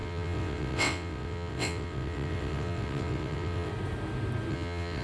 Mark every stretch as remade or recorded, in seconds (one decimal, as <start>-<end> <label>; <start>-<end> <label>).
0.0-3.7 remade; 3.7-4.5 recorded; 4.5-5.0 remade